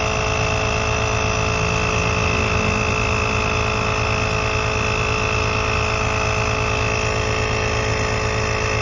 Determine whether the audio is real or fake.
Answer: real